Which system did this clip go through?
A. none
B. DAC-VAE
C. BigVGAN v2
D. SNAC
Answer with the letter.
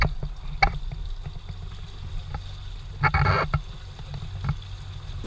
A